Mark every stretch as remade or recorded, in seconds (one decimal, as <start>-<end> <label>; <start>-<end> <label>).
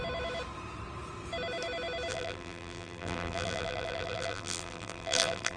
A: 0.0-2.1 recorded; 2.1-5.6 remade